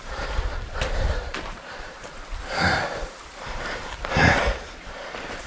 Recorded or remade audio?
remade